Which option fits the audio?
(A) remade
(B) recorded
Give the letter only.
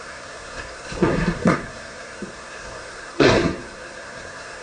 A